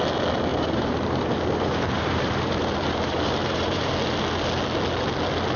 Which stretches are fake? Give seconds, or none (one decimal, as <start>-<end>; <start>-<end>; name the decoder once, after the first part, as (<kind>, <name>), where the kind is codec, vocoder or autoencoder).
0.5-3.9 (vocoder, BigVGAN v2)